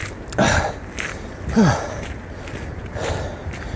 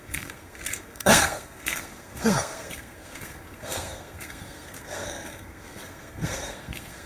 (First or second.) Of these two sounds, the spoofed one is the second